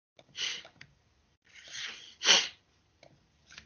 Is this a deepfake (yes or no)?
no